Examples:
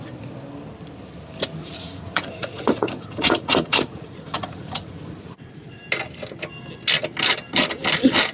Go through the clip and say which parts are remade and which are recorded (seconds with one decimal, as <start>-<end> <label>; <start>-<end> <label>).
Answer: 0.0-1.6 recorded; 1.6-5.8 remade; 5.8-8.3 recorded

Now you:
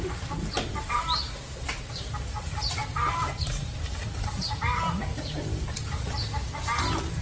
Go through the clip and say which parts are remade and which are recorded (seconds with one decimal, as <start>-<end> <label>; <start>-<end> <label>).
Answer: 0.0-7.2 recorded

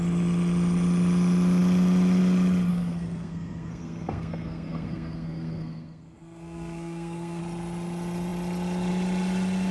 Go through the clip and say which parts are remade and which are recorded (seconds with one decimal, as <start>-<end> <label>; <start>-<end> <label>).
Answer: 0.0-2.7 recorded; 2.7-7.4 remade; 7.4-9.7 recorded

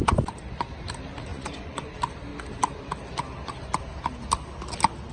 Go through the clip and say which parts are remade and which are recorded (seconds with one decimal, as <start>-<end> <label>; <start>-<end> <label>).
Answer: 0.0-1.3 recorded; 1.3-1.9 remade; 1.9-5.1 recorded

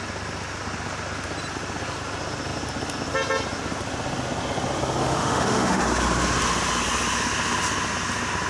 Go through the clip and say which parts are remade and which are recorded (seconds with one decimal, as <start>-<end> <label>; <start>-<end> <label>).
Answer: 0.0-5.0 recorded; 5.0-5.8 remade; 5.8-8.5 recorded